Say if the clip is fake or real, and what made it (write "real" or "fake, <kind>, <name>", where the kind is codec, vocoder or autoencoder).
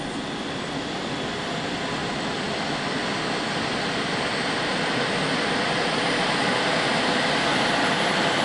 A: real